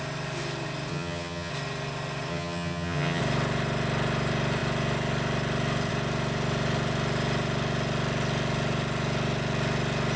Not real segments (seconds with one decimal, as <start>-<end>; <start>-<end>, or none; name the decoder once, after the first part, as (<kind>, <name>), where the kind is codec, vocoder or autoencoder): 0.9-1.5 (vocoder, HiFi-GAN); 2.3-3.2